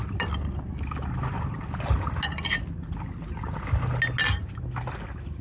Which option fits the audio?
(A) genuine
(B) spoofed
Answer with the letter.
A